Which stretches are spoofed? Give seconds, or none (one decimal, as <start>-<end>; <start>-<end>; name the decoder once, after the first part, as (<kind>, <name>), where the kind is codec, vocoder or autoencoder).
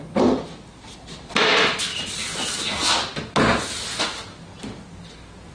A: none